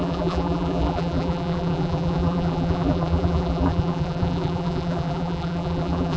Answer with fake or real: fake